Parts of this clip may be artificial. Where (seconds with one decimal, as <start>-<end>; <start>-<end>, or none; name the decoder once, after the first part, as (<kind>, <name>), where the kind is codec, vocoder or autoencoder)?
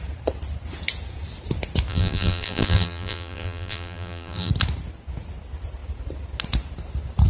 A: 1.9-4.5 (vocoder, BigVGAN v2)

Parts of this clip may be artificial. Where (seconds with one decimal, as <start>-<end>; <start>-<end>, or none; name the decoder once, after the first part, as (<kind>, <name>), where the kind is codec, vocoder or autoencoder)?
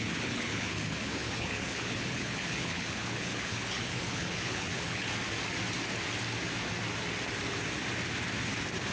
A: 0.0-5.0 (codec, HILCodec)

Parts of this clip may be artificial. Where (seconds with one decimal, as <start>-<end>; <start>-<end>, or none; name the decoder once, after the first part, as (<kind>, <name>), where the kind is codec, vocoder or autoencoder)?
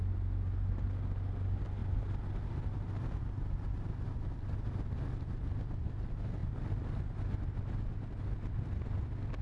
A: none